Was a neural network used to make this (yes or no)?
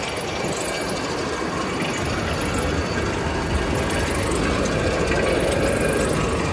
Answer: no